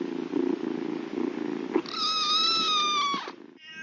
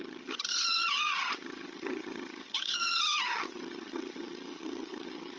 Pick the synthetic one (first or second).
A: second